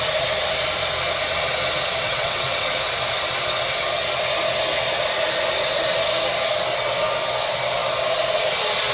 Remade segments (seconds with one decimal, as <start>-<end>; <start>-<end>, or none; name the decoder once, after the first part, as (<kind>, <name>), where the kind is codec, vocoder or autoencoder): 1.9-2.7 (vocoder, WaveNeXt)

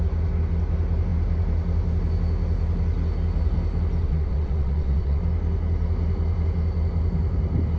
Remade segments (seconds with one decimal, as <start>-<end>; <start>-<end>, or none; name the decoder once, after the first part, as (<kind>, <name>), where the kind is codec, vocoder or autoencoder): 4.0-5.2 (vocoder, WaveNeXt)